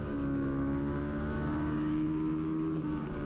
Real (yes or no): no